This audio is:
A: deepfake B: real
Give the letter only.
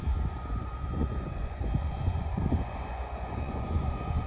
A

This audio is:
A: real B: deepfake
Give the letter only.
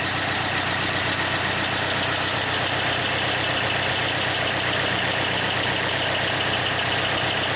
A